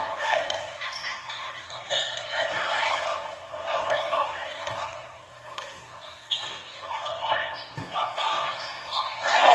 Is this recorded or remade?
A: remade